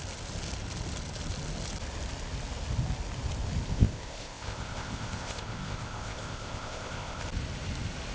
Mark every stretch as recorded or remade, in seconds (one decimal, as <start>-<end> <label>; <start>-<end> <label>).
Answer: 0.0-3.7 recorded; 3.7-7.2 remade; 7.2-8.1 recorded